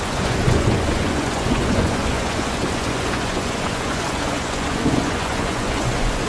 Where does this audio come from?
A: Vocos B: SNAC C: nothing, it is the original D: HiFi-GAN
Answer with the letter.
A